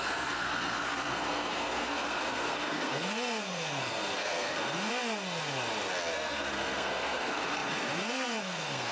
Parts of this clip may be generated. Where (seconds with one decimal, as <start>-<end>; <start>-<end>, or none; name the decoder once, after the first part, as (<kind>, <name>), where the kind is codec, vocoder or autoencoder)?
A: 0.0-4.9 (codec, SNAC); 6.1-8.9